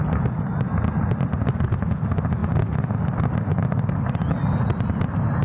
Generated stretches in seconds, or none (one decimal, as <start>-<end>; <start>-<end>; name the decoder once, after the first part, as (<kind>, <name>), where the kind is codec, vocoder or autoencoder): none

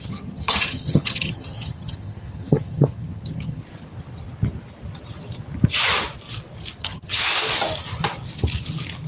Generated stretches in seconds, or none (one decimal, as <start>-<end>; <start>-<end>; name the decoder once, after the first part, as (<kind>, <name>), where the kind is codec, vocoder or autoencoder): 0.0-3.6 (vocoder, HiFi-GAN); 6.8-7.3

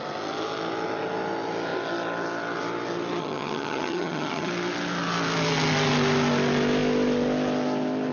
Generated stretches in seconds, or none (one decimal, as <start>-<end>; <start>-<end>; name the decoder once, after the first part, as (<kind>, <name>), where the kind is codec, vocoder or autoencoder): 3.2-4.5 (vocoder, HiFi-GAN)